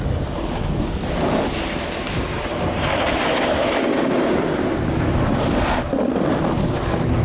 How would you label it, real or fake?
real